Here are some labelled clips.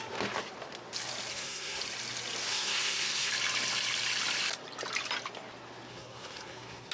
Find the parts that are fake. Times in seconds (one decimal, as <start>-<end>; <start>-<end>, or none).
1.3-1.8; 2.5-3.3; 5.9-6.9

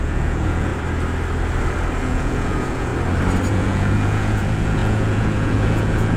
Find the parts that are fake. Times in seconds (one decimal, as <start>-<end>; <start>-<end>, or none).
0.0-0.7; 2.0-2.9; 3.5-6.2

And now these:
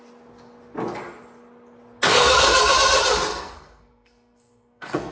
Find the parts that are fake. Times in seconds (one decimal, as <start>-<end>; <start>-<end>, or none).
2.1-2.7; 3.3-5.1

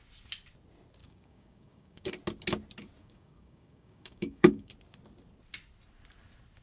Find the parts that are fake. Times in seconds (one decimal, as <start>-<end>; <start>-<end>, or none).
1.0-2.1; 3.0-4.7

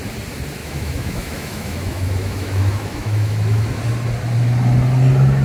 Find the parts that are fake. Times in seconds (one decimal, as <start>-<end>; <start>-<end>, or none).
0.6-3.8

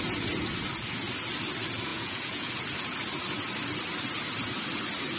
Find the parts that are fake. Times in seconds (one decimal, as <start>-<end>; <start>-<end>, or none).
1.9-2.5

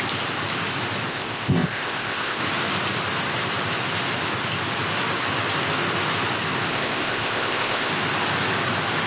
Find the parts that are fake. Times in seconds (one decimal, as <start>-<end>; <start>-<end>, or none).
1.1-2.4; 6.7-7.9